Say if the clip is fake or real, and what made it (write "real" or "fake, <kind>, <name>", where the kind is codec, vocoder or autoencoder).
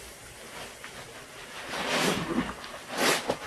real